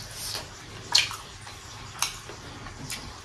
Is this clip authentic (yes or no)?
yes